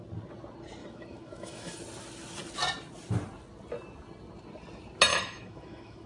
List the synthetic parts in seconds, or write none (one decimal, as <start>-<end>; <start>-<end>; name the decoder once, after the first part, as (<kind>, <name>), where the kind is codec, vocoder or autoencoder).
0.8-1.8 (autoencoder, DAC-VAE); 5.1-6.1